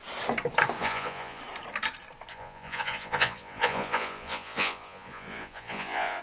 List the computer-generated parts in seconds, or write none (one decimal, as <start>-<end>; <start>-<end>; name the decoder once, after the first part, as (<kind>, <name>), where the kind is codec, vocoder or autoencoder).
0.8-1.4 (vocoder, Vocos); 2.3-6.2